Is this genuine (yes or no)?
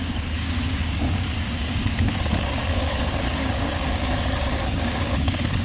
no